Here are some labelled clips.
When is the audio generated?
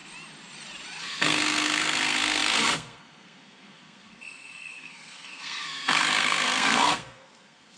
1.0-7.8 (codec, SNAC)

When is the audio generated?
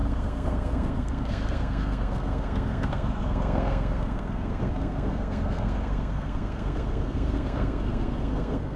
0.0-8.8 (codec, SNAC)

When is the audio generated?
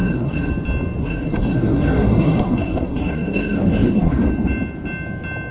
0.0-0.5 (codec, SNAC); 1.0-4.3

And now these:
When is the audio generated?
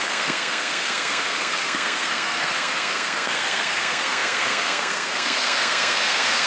0.0-6.5 (codec, SNAC)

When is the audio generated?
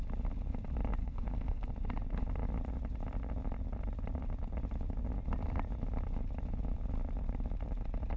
1.0-1.7 (codec, SNAC)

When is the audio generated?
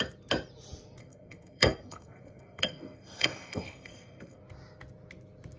1.0-4.4 (codec, SNAC)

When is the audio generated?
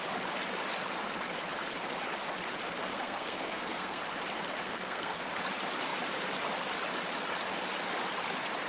2.8-4.0 (codec, SNAC); 4.6-5.2